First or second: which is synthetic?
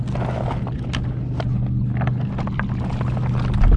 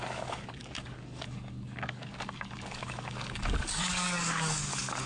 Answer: second